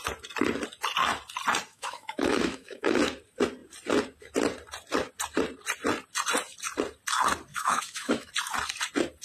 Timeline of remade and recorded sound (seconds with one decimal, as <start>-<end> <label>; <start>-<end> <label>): 0.0-1.7 recorded; 1.7-3.0 remade; 3.0-7.5 recorded; 7.5-8.3 remade; 8.3-9.2 recorded